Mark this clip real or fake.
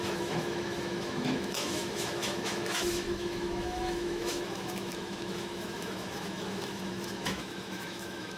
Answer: fake